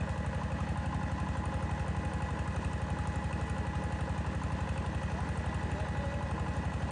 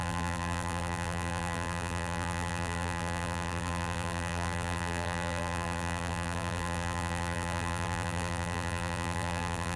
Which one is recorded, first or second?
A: first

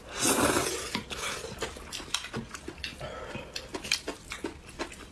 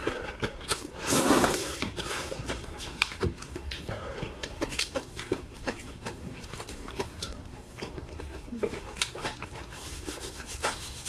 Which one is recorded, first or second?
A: first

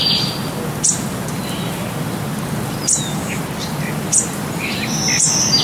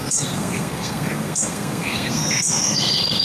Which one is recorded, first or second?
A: first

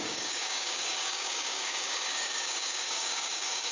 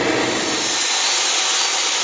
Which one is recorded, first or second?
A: second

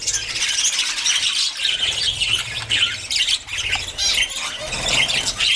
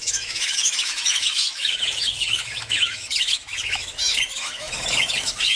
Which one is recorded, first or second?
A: first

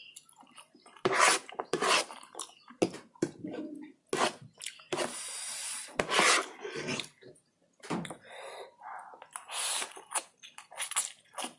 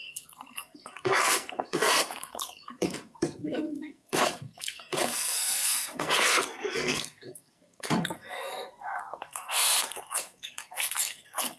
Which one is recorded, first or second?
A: first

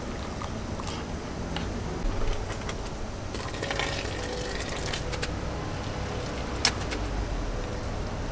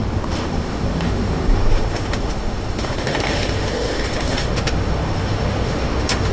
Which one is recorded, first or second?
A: first